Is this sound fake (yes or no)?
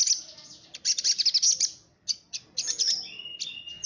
no